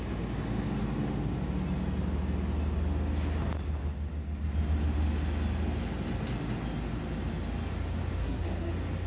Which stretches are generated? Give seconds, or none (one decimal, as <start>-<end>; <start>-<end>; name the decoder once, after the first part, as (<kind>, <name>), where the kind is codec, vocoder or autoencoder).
8.2-8.7 (codec, SNAC)